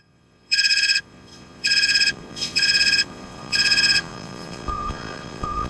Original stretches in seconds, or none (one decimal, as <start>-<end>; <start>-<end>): none